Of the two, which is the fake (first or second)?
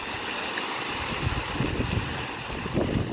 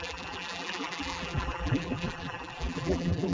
second